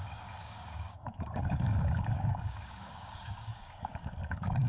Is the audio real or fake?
fake